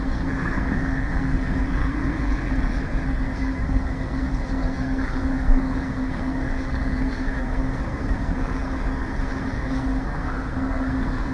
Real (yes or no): no